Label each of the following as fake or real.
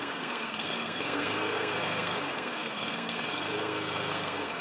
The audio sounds fake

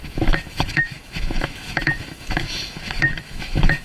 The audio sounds fake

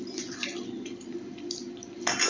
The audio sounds real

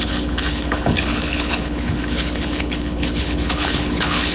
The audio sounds fake